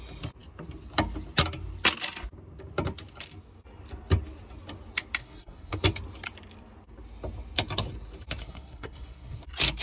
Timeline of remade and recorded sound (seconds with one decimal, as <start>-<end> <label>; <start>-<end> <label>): 0.0-5.2 recorded; 5.2-5.8 remade; 5.8-8.4 recorded; 8.4-9.4 remade; 9.4-9.8 recorded